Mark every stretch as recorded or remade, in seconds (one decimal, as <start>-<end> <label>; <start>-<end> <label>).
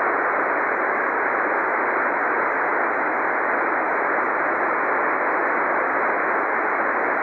0.0-7.2 recorded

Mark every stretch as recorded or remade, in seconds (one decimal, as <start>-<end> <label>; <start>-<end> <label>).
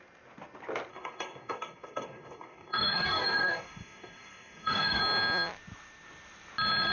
0.0-0.9 recorded; 0.9-5.0 remade; 5.0-6.9 recorded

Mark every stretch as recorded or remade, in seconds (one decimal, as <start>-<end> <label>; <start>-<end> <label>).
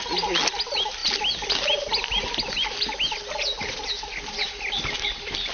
0.0-5.5 recorded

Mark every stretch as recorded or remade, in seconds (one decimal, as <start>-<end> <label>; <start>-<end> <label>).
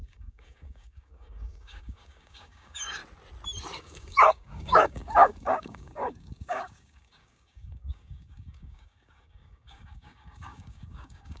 0.0-3.0 remade; 3.0-3.8 recorded; 3.8-11.4 remade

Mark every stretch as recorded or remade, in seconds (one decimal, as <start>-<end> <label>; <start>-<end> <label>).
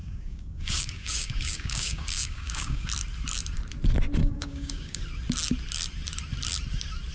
0.0-2.9 remade; 2.9-4.2 recorded; 4.2-5.0 remade; 5.0-7.1 recorded